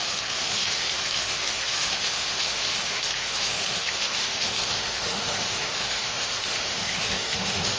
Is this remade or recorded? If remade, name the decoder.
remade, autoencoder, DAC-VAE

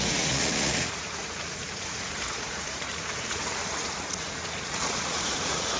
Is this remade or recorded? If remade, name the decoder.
remade, vocoder, Vocos